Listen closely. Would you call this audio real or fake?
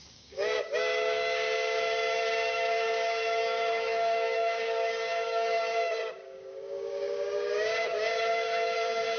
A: fake